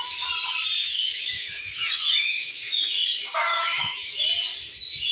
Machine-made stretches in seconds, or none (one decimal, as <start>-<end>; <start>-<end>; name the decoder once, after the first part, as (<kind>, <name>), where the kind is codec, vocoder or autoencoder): 0.8-3.0 (autoencoder, DAC-VAE); 3.5-4.2